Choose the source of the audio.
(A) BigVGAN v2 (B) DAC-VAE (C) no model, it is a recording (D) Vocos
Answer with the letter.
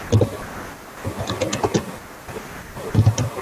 C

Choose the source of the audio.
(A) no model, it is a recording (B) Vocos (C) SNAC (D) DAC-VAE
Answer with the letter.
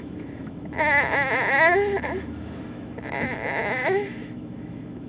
D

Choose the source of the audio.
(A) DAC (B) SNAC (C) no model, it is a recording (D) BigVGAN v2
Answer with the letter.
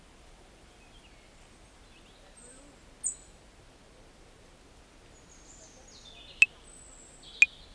C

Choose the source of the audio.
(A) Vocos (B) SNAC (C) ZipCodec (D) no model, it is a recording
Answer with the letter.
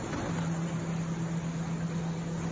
D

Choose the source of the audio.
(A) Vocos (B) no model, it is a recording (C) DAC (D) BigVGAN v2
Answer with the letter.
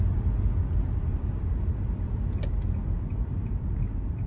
B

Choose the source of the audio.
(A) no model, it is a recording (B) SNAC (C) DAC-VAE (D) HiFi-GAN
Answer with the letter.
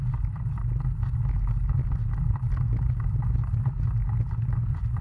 A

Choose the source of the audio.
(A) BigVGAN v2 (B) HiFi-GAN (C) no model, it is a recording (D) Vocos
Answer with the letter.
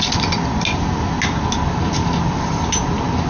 C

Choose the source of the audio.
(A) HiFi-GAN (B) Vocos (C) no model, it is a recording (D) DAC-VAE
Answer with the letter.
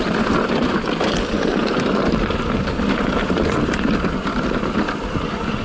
C